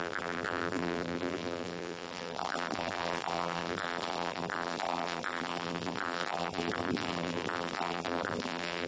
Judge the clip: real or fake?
fake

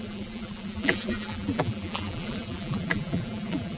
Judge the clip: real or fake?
fake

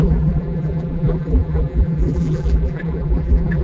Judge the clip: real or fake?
fake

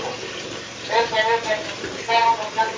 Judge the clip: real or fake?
real